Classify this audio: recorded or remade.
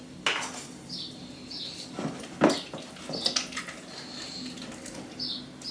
recorded